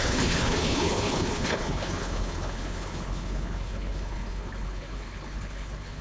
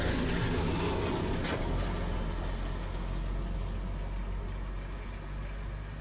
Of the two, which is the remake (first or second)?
first